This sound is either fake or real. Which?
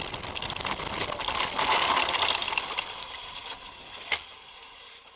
real